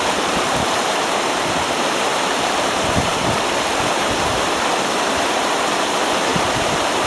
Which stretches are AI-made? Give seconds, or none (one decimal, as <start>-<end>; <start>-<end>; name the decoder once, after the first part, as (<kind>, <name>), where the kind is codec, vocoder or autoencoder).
0.0-3.1 (vocoder, BigVGAN v2); 3.9-7.1